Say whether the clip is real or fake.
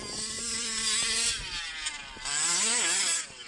real